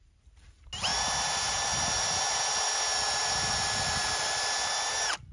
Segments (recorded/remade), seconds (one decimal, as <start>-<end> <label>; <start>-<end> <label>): 0.0-5.3 recorded